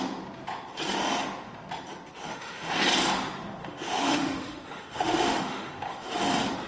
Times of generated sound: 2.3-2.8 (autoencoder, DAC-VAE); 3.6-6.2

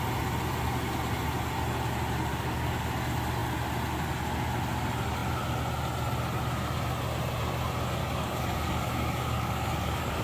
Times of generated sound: 2.3-2.9 (codec, DAC); 8.0-10.2